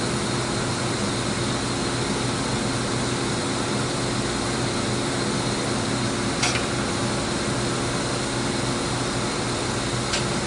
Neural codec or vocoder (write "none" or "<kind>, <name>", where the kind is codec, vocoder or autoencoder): none